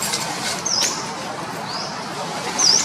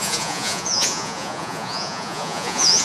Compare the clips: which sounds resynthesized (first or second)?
second